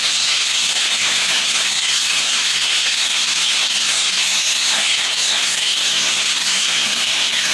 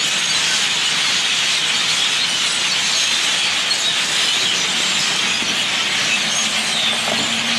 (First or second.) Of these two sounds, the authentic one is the second